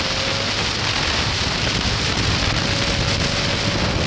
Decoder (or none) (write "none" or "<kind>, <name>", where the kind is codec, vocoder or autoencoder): none